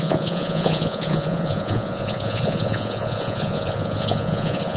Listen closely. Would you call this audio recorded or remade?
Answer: remade